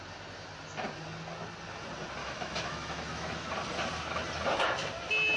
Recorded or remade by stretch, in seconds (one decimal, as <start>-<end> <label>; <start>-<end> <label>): 0.0-2.2 recorded; 2.2-3.5 remade; 3.5-5.4 recorded